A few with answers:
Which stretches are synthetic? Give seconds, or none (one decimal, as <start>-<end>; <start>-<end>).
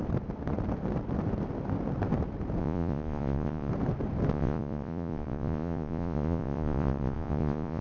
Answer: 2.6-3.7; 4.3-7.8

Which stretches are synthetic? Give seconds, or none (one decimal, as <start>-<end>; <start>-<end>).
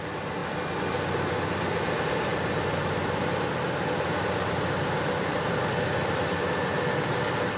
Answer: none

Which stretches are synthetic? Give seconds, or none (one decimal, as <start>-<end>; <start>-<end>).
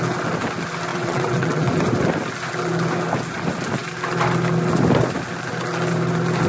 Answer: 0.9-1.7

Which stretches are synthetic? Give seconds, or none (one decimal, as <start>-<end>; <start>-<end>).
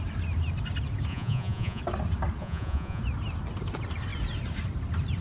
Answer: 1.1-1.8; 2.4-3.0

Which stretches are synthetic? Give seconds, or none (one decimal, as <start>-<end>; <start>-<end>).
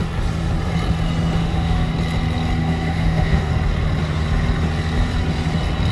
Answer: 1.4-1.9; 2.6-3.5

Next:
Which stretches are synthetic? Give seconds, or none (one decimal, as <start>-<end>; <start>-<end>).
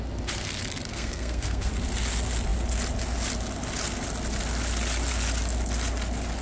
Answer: 0.9-1.7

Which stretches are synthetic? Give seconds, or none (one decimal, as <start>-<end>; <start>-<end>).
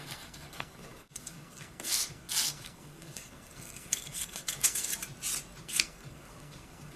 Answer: 0.0-4.9; 5.6-7.0